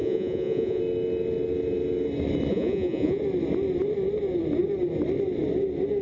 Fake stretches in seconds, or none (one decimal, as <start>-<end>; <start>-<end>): 0.0-0.8; 2.5-3.2